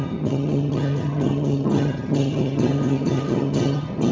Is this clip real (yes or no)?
no